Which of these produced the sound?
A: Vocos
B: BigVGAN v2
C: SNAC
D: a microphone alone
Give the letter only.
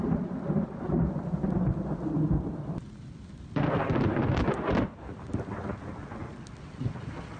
D